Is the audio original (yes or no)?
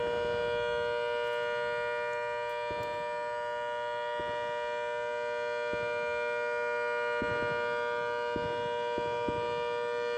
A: yes